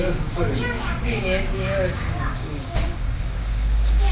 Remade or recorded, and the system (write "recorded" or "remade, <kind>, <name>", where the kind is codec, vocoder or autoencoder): remade, codec, DAC